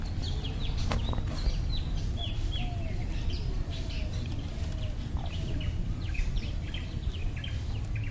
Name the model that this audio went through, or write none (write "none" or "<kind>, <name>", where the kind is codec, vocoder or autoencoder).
none